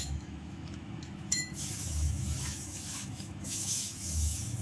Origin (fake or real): fake